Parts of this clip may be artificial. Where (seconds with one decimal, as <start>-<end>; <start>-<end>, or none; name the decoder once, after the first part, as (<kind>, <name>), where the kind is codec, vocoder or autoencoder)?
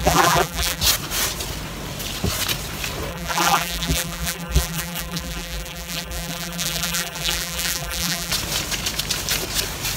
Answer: 0.0-0.8 (vocoder, BigVGAN v2); 3.1-8.3